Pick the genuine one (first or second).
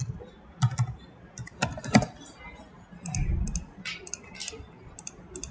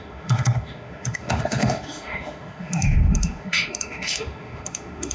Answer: first